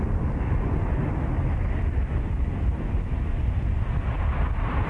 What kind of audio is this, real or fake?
real